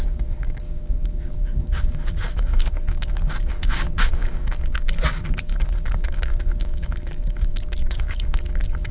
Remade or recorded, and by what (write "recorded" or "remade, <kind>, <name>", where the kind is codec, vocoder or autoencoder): remade, codec, DAC